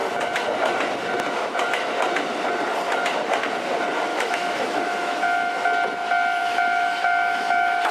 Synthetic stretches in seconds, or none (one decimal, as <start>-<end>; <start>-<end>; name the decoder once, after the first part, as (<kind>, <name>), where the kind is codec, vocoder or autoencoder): 4.1-5.5 (autoencoder, DAC-VAE); 6.4-7.9